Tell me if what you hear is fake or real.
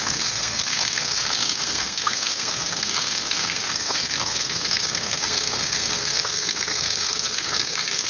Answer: fake